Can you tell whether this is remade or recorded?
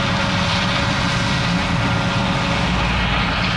recorded